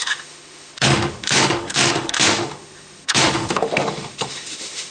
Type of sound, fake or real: fake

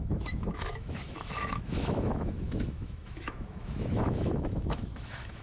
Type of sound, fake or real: fake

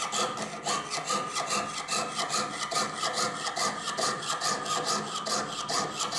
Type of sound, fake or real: real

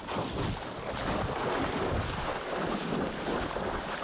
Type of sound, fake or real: real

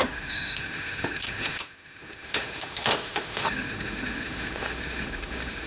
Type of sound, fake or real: fake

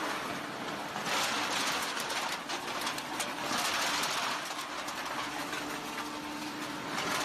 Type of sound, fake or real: real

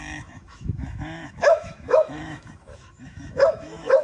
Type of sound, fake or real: fake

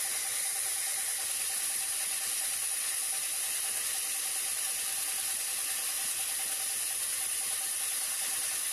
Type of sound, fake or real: real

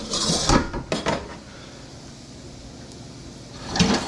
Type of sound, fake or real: real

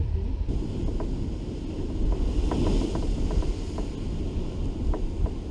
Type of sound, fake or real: real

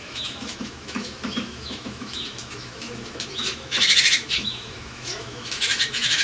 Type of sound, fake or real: fake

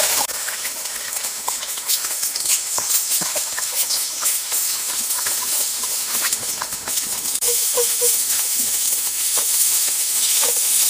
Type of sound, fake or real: fake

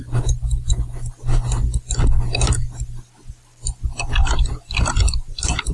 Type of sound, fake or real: real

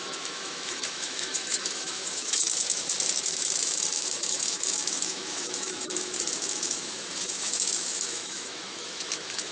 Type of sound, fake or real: fake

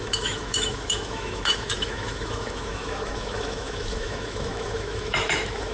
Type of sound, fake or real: fake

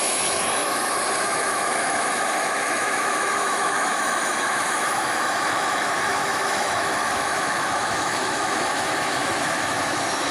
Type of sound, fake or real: fake